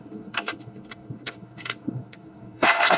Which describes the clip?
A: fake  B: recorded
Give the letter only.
A